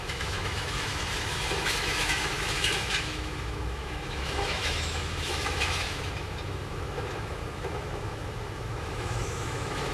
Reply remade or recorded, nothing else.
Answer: remade